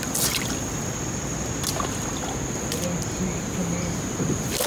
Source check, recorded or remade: recorded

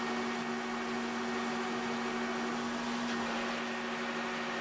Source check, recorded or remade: recorded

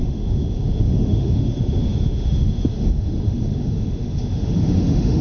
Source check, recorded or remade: remade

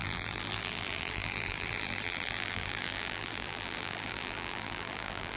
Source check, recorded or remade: remade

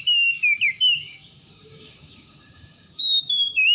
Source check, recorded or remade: remade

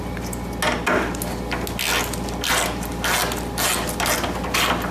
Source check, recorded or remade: recorded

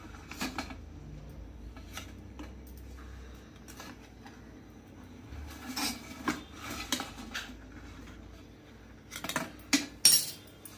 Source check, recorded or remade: recorded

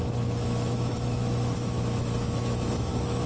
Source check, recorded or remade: remade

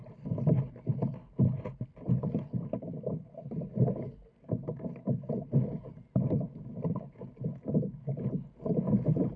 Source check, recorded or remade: recorded